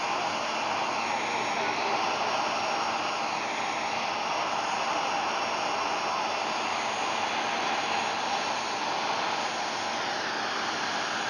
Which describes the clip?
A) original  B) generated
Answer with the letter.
A